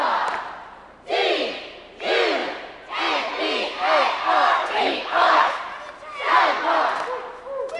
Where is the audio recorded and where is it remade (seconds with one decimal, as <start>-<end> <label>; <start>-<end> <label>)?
0.0-4.6 recorded; 4.6-5.6 remade; 5.6-7.8 recorded